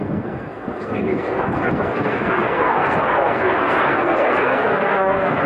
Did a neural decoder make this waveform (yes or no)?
yes